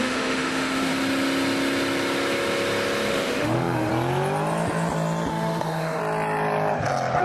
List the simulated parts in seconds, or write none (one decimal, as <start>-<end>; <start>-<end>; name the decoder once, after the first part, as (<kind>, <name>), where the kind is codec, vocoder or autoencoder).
0.0-0.9 (autoencoder, DAC-VAE); 3.1-3.9; 5.3-6.0